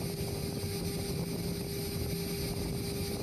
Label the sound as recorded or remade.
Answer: recorded